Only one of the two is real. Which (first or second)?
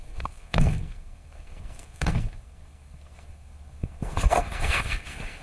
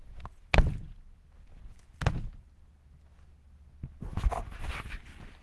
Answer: second